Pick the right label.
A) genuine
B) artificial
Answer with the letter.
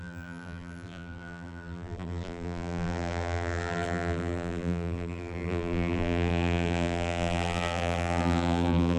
B